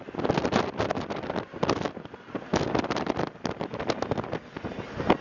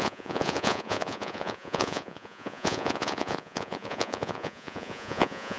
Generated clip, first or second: second